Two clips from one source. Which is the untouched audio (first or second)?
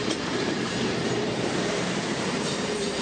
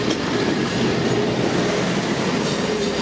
second